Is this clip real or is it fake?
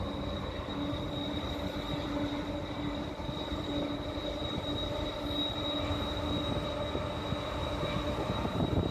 real